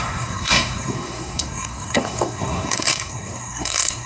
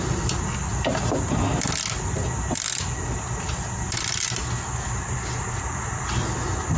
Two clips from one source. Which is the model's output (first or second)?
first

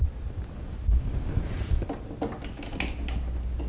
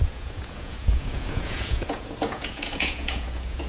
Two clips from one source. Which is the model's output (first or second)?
second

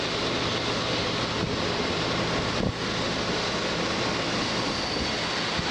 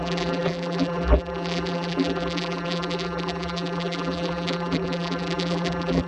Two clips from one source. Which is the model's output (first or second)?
second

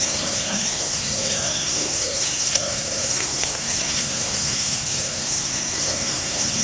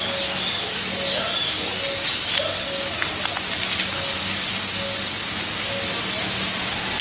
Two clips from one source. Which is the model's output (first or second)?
first